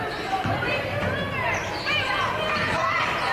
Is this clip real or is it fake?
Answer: fake